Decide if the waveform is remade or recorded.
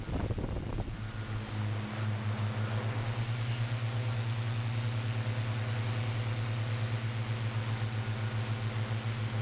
recorded